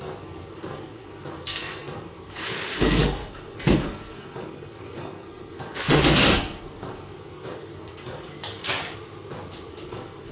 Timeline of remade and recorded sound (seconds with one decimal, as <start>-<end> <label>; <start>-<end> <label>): 0.0-8.8 remade; 8.8-9.7 recorded; 9.7-10.3 remade